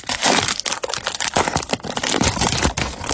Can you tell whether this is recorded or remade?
remade